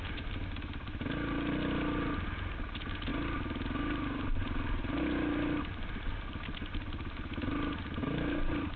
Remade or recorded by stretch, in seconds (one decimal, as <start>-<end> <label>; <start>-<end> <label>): 0.0-8.8 recorded